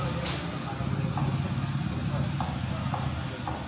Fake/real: real